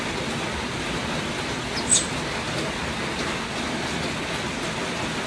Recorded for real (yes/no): yes